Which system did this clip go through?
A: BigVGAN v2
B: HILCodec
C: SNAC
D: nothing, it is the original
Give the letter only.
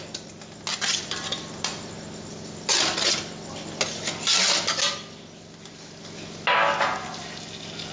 D